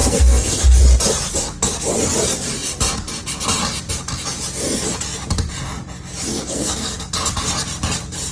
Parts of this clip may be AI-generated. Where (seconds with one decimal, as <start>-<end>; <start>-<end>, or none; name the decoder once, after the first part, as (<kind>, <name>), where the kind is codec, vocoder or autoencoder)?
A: 0.0-0.6 (codec, SNAC); 6.3-7.1